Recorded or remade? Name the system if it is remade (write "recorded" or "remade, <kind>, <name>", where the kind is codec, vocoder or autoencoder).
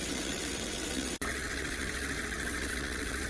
remade, vocoder, WaveNeXt